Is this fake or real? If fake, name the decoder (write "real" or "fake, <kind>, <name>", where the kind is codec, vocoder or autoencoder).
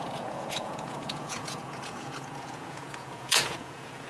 fake, vocoder, Vocos